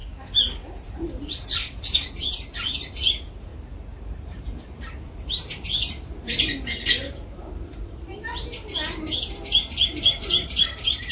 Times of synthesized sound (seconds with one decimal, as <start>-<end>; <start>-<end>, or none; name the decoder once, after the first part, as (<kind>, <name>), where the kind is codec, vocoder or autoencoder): 0.9-3.5 (vocoder, BigVGAN v2); 4.0-6.5; 7.0-11.1